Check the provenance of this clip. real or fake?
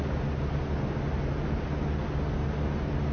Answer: real